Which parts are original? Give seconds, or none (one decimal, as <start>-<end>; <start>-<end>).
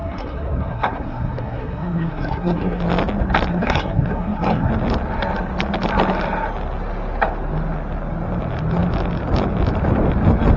2.8-3.5; 4.7-10.6